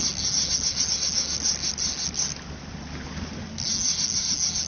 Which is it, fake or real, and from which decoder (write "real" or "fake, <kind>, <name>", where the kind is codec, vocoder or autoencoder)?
real